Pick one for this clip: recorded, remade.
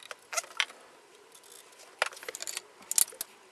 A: recorded